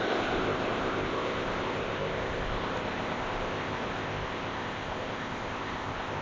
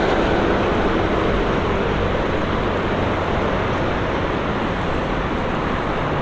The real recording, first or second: second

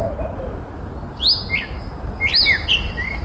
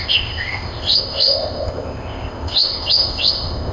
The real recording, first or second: first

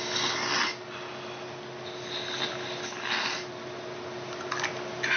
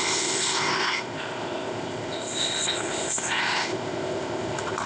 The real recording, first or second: first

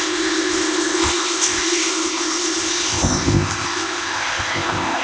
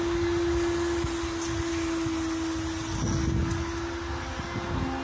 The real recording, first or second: second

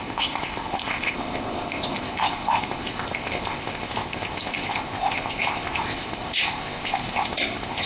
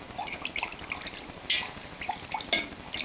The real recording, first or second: second